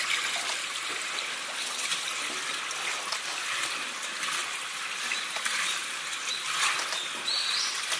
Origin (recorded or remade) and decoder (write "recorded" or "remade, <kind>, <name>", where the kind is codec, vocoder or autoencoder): recorded